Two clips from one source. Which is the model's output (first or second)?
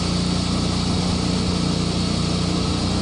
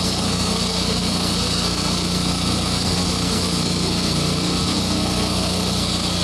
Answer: second